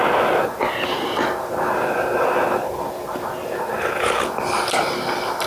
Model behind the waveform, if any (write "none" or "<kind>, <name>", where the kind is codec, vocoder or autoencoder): none